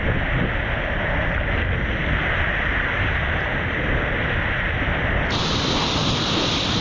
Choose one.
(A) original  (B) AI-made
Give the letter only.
A